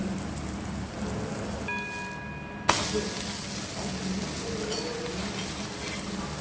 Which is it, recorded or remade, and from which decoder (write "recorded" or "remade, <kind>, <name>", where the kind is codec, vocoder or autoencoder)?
recorded